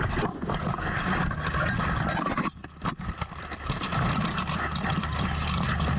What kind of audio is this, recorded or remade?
recorded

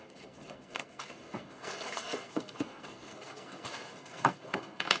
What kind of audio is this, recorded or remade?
remade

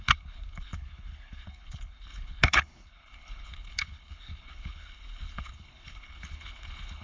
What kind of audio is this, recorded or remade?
remade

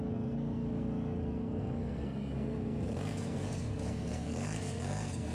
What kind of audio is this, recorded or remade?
remade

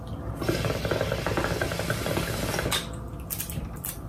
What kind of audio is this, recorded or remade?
recorded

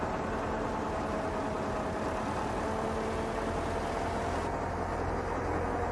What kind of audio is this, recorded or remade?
recorded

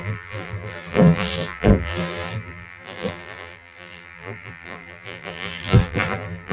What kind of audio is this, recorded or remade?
remade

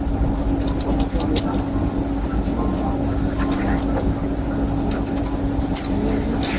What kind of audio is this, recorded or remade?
recorded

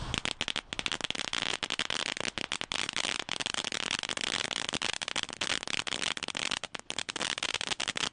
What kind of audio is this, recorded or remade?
recorded